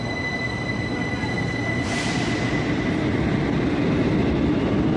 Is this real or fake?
real